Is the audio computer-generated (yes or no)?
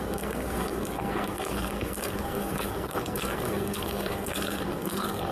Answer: yes